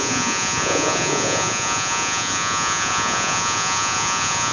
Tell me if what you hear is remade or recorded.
remade